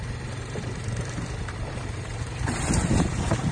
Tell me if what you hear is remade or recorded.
remade